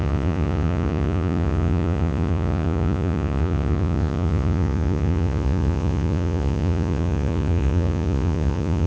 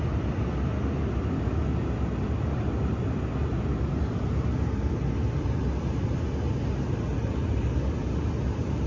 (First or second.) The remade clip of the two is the first